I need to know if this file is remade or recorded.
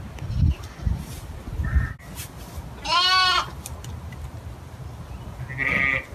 recorded